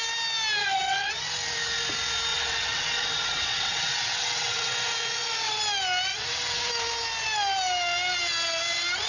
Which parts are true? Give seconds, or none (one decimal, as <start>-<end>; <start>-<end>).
0.0-0.6; 1.1-2.3; 5.6-6.1; 6.7-9.1